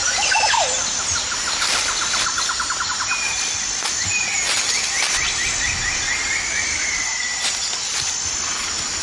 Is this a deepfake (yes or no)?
no